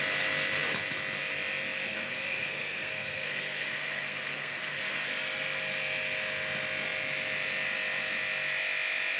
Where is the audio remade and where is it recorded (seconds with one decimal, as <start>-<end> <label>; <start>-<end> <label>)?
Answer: 0.0-1.9 recorded; 1.9-5.1 remade; 5.1-9.2 recorded